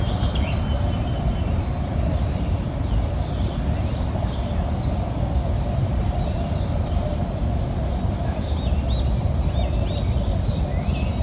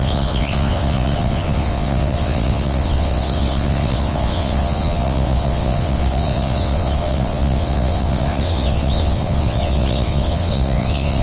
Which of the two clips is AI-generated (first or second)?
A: second